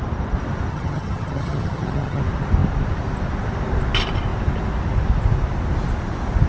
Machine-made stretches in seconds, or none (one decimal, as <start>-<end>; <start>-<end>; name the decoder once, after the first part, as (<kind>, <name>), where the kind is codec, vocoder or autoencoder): 0.7-2.2 (vocoder, HiFi-GAN)